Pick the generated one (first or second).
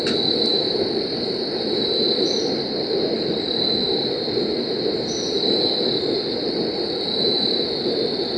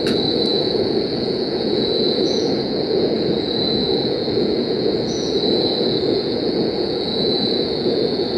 second